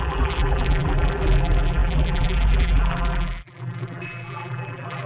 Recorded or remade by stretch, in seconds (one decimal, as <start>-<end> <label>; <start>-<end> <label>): 0.0-5.1 remade